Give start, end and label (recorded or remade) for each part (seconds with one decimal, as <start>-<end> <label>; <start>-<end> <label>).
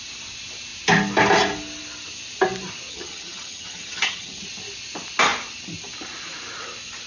0.0-2.9 recorded; 2.9-4.4 remade; 4.4-7.1 recorded